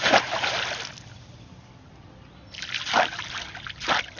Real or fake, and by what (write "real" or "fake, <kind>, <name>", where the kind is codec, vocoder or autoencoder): real